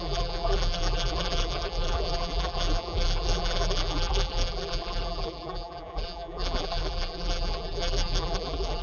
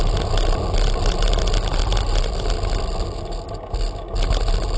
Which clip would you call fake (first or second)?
first